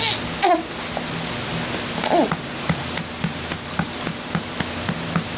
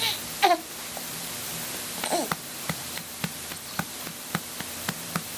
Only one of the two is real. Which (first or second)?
first